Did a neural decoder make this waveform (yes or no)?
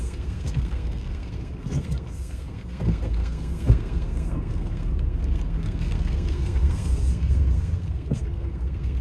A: yes